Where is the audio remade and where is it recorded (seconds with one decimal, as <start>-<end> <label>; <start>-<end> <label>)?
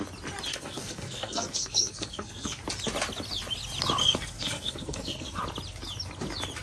0.0-0.5 recorded; 0.5-2.6 remade; 2.6-4.0 recorded; 4.0-5.4 remade; 5.4-6.6 recorded